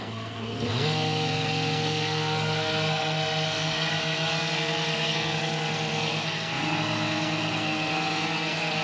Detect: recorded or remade remade